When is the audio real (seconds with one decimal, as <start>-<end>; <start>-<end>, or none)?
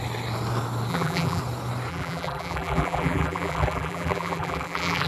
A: 0.0-0.9; 1.4-1.9